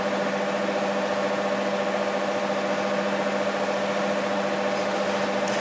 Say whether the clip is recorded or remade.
recorded